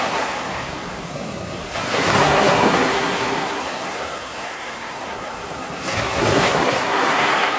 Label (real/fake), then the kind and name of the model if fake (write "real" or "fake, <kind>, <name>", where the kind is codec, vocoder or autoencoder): fake, codec, SNAC